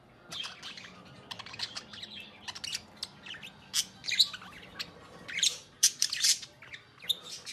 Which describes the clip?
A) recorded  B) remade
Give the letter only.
A